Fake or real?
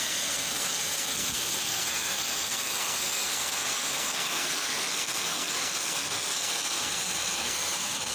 fake